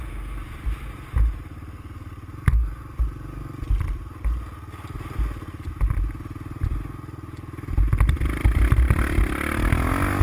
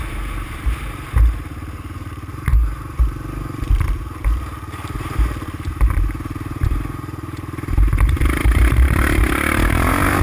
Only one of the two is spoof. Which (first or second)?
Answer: second